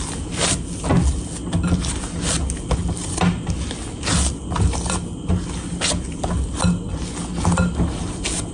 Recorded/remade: recorded